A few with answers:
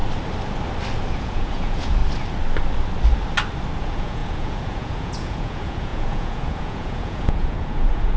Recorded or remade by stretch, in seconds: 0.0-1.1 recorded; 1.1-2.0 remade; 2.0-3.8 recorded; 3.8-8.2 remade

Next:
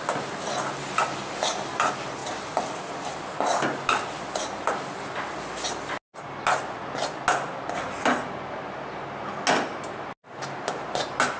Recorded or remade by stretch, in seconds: 0.0-11.4 recorded